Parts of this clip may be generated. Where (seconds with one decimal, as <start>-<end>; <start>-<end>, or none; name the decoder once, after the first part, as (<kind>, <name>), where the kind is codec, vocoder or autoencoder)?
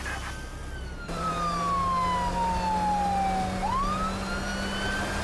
0.6-1.3 (vocoder, BigVGAN v2)